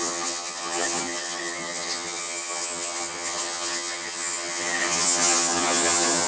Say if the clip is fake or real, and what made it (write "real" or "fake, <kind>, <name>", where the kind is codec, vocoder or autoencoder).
fake, vocoder, HiFi-GAN